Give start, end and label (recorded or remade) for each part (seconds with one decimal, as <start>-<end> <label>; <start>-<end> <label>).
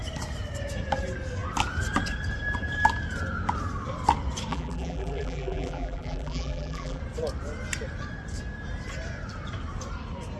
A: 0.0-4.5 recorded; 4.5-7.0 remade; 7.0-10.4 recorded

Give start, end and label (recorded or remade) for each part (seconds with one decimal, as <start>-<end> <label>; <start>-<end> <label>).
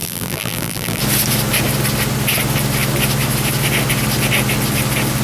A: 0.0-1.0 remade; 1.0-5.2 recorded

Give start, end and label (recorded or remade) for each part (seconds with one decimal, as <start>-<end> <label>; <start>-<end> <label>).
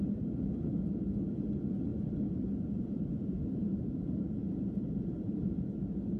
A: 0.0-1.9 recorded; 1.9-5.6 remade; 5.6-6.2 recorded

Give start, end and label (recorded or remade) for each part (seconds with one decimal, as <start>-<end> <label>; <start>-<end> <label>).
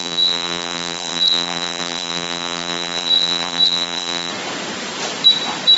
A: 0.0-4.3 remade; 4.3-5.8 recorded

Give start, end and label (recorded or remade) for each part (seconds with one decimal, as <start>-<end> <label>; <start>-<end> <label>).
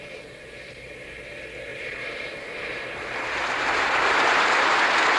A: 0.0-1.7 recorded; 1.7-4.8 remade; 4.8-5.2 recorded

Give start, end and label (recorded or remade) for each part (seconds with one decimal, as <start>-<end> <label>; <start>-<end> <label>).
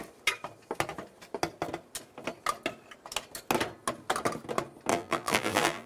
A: 0.0-4.9 recorded; 4.9-5.9 remade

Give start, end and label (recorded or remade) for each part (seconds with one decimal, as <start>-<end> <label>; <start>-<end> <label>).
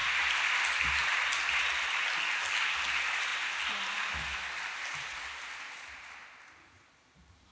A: 0.0-1.1 remade; 1.1-7.5 recorded